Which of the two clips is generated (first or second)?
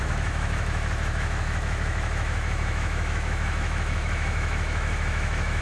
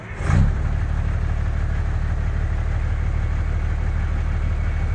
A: first